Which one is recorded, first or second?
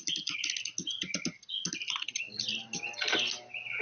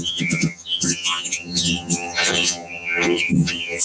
first